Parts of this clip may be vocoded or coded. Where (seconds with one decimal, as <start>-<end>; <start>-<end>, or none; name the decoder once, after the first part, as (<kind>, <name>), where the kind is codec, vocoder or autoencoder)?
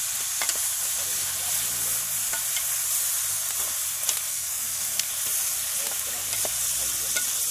4.3-5.1 (codec, SNAC)